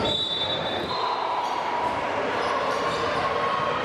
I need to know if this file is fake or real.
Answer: fake